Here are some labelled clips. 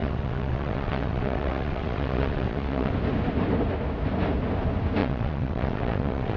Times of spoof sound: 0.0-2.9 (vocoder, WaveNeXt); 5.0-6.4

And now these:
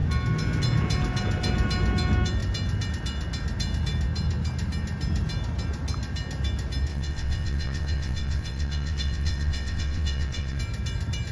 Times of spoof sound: 6.9-10.6 (vocoder, WaveNeXt)